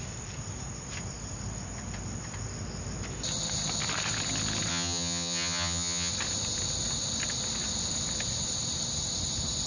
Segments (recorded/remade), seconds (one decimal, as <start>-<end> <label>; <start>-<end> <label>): 0.0-4.7 recorded; 4.7-6.1 remade; 6.1-9.7 recorded